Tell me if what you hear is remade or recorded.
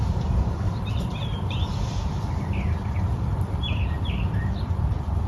remade